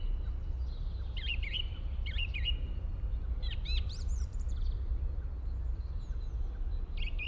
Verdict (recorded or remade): recorded